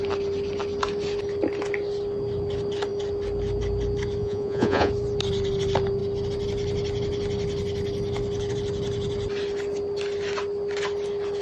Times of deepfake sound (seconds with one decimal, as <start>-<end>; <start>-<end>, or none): 4.2-4.9

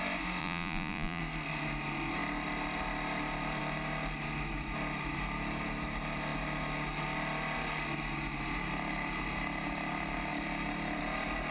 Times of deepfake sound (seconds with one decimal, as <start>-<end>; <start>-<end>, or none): 0.4-1.2

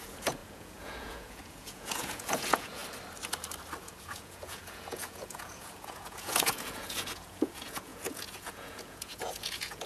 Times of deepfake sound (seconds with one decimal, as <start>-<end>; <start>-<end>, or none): 0.0-2.8; 3.8-9.9

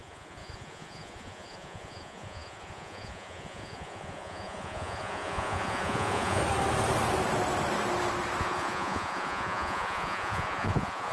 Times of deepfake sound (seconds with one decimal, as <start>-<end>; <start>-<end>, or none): 0.0-6.4; 8.4-11.1

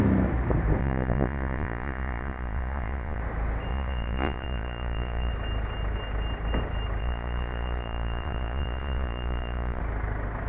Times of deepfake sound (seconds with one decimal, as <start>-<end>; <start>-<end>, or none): 0.8-3.2; 3.7-5.3; 7.0-9.8

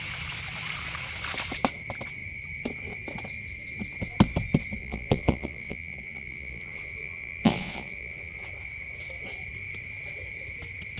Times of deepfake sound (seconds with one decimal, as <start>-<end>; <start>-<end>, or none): 4.8-8.5